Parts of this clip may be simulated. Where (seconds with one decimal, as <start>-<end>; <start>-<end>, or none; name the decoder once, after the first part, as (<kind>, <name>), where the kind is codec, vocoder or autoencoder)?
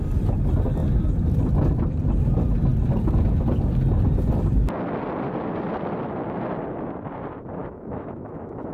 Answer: 7.6-8.7 (autoencoder, DAC-VAE)